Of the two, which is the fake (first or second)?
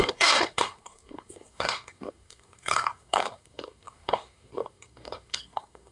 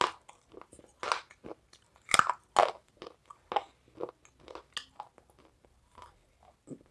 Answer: first